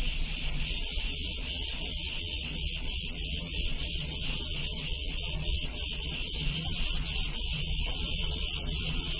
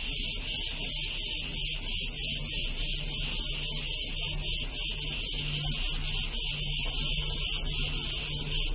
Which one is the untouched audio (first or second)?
second